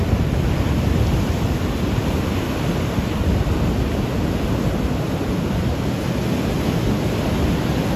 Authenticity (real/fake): real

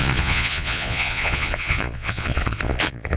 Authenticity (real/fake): fake